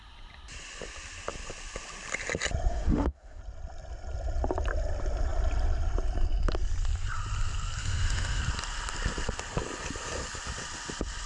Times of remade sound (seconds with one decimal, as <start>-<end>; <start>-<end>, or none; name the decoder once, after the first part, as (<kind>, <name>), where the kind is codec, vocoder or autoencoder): 2.7-3.4 (autoencoder, DAC-VAE); 7.8-8.4